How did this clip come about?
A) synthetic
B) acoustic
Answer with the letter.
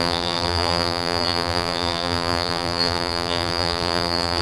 A